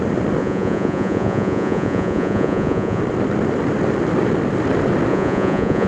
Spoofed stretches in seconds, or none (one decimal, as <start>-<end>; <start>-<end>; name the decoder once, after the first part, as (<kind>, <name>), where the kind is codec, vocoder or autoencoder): 0.4-3.0 (vocoder, Vocos); 5.1-5.9